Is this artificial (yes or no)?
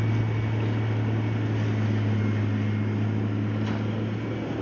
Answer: no